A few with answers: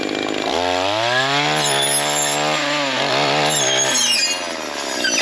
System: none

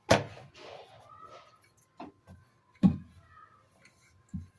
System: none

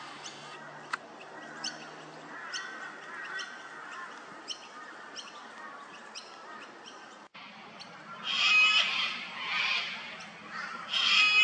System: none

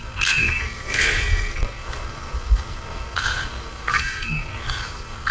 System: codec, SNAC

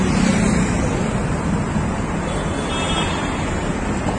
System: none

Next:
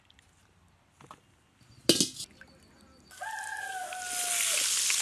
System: none